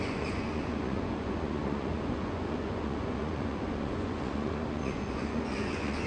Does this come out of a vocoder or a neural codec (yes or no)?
yes